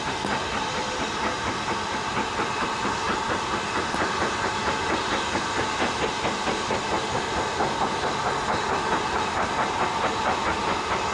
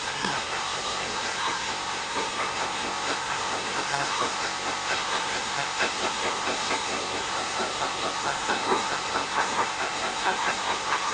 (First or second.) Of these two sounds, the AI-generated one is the second